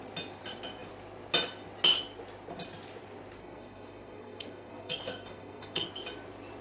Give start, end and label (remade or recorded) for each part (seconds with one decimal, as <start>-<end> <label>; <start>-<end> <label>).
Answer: 0.0-3.4 recorded; 3.4-5.9 remade; 5.9-6.6 recorded